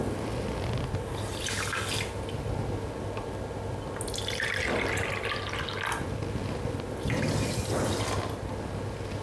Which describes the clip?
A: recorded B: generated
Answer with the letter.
A